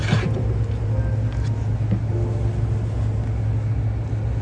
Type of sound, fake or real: real